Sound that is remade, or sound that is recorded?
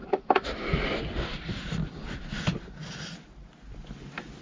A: recorded